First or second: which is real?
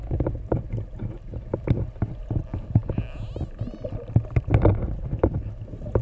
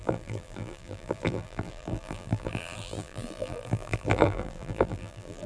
first